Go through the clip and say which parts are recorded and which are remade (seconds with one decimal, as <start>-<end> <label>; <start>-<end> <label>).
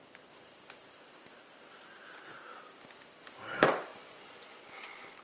0.0-3.9 recorded; 3.9-5.2 remade